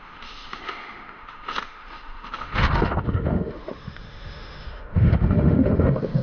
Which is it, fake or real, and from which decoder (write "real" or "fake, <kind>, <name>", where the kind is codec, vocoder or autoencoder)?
fake, autoencoder, DAC-VAE